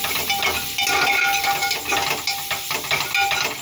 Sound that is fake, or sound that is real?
real